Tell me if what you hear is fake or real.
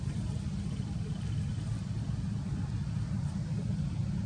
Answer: real